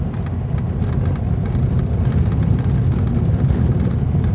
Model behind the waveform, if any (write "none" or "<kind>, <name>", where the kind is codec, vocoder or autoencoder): none